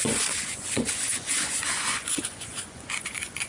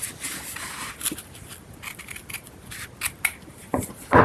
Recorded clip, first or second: second